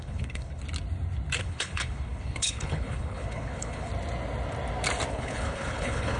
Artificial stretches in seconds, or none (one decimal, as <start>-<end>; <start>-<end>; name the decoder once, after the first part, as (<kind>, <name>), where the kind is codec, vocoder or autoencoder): 0.0-0.6 (codec, HILCodec); 1.4-3.9; 5.1-6.2